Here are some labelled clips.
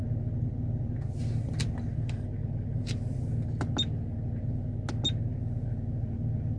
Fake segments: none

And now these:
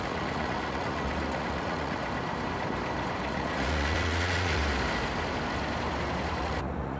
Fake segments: 0.0-2.0 (vocoder, Vocos); 3.2-4.6; 6.4-7.0

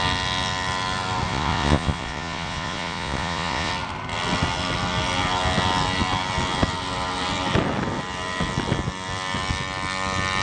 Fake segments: 1.3-3.7 (vocoder, Vocos)